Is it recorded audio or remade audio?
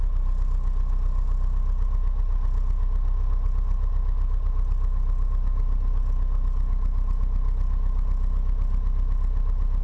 recorded